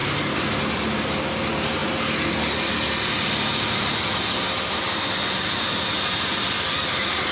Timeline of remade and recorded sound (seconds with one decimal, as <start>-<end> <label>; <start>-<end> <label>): 0.0-7.3 recorded